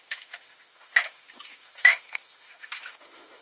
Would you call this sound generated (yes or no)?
yes